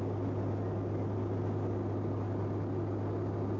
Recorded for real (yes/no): yes